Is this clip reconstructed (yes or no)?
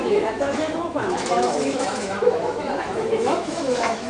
yes